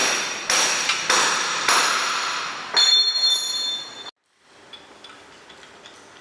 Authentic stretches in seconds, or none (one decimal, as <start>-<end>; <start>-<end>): 0.0-6.2